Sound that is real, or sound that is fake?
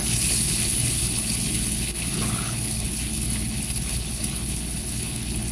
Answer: fake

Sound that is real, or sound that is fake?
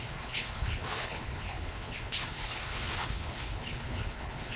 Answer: fake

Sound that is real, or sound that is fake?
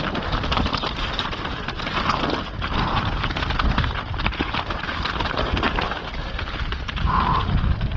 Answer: real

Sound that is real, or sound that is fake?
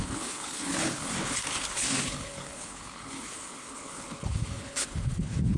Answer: fake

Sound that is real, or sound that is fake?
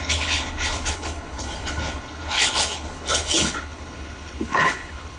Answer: fake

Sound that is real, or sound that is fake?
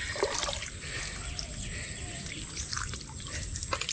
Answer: real